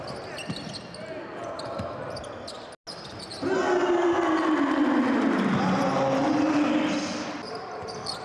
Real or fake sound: real